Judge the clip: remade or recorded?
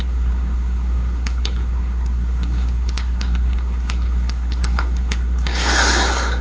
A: remade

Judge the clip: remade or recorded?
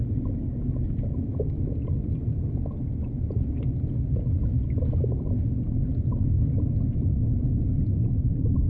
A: recorded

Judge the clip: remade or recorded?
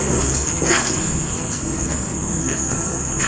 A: remade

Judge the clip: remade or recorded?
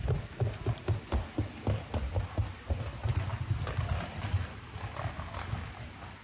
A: recorded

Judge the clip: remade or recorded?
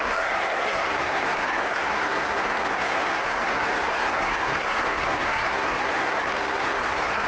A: remade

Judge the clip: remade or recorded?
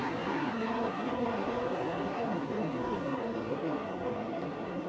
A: remade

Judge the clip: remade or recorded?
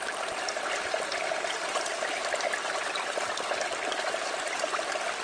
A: recorded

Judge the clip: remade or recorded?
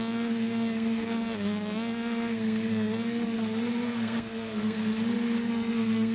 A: remade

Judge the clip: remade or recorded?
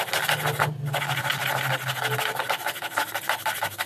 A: recorded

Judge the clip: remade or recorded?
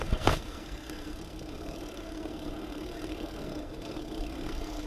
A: remade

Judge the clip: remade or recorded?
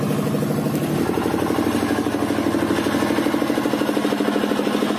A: recorded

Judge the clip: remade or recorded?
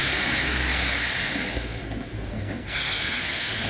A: remade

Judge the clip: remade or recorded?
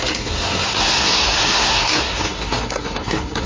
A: remade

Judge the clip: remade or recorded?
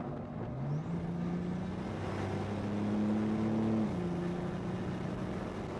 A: recorded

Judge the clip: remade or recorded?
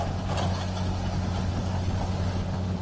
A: recorded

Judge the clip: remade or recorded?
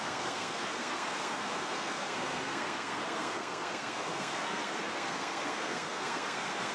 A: remade